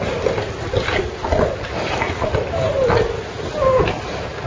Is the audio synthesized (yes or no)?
no